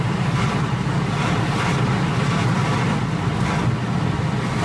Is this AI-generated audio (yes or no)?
yes